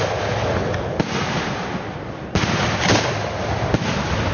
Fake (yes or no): no